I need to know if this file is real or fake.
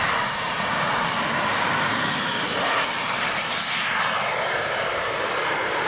fake